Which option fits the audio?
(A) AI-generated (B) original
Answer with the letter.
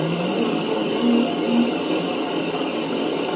A